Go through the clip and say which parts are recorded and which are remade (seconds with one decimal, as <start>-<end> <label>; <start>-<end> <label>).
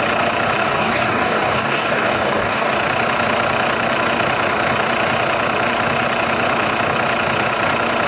0.0-0.6 recorded; 0.6-2.7 remade; 2.7-8.1 recorded